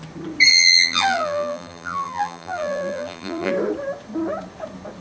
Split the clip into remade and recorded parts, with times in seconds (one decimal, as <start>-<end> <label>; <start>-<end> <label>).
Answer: 0.0-0.5 recorded; 0.5-3.5 remade; 3.5-5.0 recorded